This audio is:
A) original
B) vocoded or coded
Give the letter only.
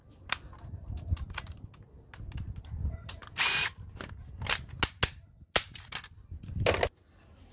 A